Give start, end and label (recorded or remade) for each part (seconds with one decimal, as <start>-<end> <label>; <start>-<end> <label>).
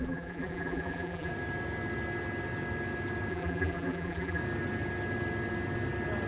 0.0-1.3 remade; 1.3-3.3 recorded; 3.3-4.4 remade; 4.4-6.3 recorded